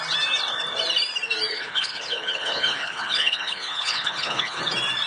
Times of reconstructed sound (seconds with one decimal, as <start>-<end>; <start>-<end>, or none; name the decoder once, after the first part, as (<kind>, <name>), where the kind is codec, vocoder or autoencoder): 1.5-4.6 (codec, HILCodec)